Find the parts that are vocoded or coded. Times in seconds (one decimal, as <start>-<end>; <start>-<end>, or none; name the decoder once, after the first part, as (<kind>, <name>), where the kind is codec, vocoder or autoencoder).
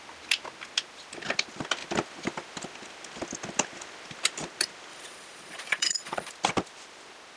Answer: 4.9-6.3 (vocoder, Vocos)